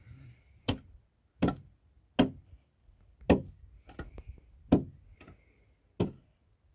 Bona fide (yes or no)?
yes